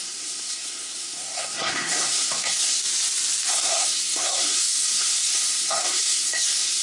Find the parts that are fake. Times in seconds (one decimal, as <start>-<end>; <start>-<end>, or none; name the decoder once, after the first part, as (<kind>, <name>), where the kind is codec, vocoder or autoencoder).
0.0-2.8 (codec, SNAC); 3.5-6.8